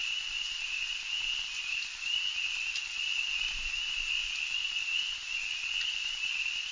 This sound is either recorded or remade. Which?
recorded